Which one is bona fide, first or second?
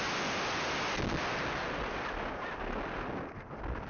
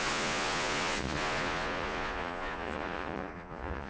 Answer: first